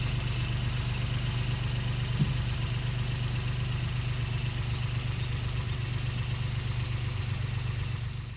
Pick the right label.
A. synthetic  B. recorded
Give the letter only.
B